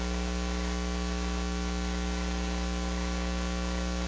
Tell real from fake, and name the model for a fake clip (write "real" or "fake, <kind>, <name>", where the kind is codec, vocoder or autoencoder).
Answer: real